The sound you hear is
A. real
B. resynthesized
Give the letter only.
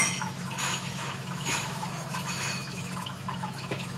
B